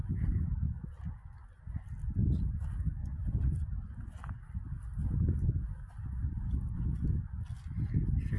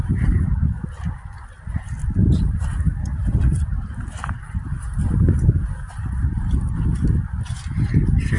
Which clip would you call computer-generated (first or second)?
second